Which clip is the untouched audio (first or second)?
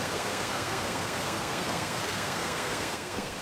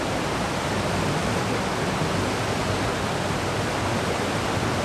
second